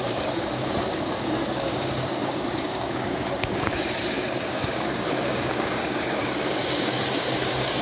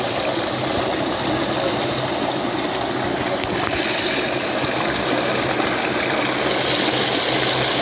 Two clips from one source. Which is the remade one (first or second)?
first